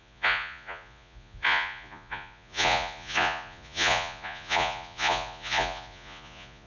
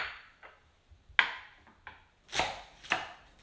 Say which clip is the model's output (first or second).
first